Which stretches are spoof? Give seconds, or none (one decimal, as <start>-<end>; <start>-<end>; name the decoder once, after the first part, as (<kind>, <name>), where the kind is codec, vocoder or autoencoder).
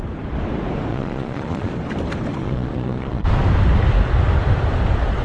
0.9-1.7 (vocoder, Vocos); 2.4-3.3